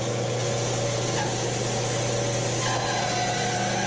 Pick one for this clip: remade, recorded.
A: recorded